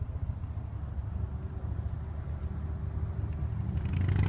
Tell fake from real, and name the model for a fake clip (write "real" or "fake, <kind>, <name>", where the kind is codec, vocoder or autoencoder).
real